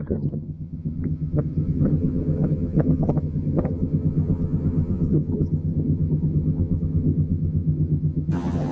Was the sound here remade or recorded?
remade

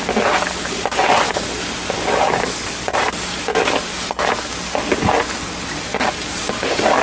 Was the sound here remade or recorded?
recorded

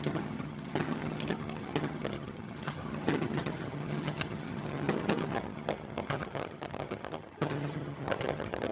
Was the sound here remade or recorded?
remade